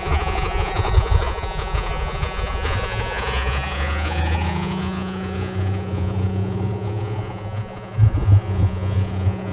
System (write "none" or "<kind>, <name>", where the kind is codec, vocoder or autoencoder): vocoder, Vocos